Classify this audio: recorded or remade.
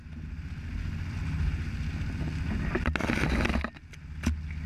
recorded